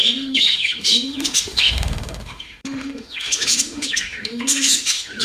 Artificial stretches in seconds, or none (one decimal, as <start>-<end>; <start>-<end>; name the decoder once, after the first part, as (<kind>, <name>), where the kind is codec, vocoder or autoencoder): 0.0-5.2 (autoencoder, DAC-VAE)